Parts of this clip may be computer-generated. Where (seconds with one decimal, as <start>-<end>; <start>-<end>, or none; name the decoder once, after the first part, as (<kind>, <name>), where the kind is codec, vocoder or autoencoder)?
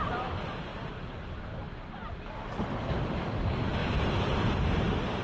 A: 0.7-1.4 (vocoder, BigVGAN v2); 3.8-5.2